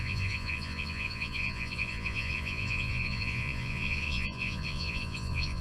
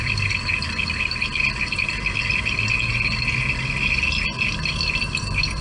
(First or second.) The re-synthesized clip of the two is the first